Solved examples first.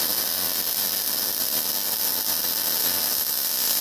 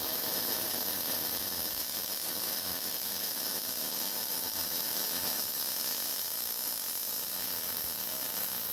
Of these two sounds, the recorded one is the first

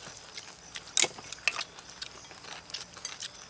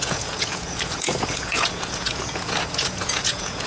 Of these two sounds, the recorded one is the first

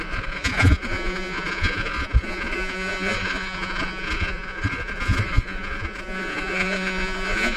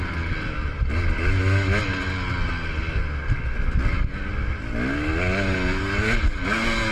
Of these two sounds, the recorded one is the second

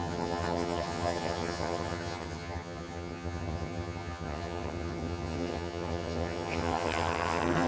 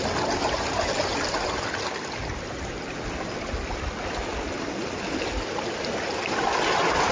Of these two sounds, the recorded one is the second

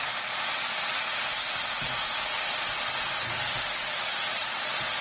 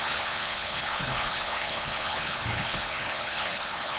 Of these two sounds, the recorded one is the first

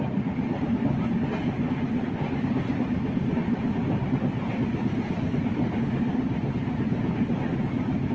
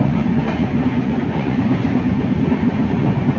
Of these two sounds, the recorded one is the first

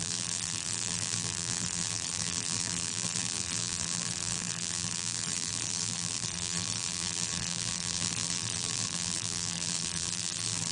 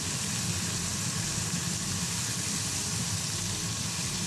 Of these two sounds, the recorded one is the second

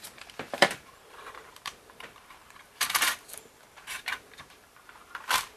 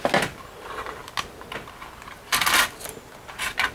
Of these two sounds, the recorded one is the second